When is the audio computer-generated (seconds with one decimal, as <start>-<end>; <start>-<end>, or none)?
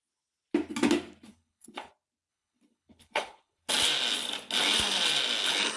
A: 1.3-1.9; 2.3-3.7